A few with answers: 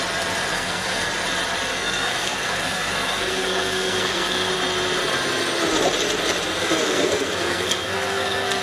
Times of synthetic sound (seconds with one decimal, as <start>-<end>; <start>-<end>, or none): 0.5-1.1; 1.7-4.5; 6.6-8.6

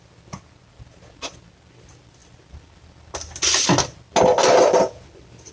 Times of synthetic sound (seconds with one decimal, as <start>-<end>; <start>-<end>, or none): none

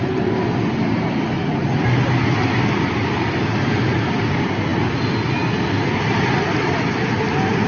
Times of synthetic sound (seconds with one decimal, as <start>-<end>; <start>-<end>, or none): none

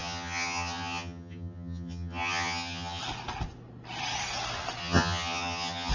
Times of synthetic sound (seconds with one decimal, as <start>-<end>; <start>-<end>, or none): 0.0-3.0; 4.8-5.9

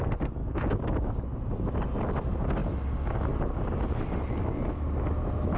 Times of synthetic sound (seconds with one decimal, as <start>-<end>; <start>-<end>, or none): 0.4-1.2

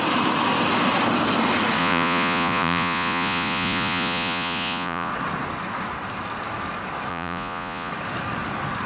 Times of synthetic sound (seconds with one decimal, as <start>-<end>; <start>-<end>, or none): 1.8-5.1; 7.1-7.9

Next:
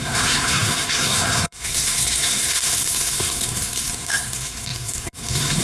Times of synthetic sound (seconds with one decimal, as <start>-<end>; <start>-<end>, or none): 0.0-5.6

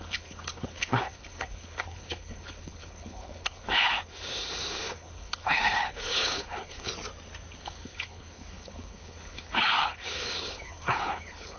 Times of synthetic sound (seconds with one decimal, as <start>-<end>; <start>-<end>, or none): 0.0-6.9; 7.6-11.6